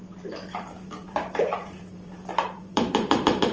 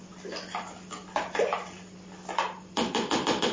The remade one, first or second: first